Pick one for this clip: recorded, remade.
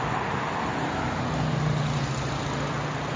recorded